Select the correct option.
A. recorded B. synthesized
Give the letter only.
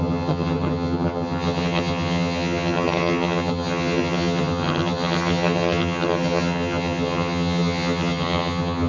B